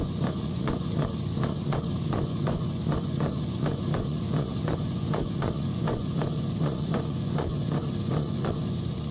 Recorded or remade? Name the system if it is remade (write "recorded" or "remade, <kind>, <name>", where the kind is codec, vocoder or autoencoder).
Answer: remade, vocoder, Vocos